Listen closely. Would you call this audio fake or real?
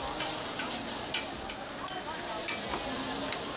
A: real